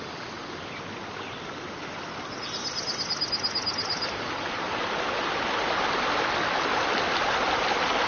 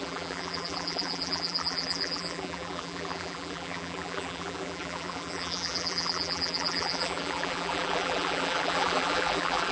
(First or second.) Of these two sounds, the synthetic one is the second